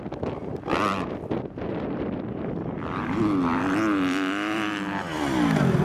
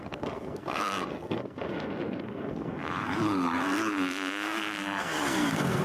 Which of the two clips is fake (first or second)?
second